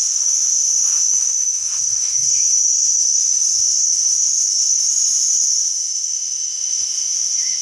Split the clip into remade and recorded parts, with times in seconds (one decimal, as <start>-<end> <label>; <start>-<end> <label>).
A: 0.0-7.6 remade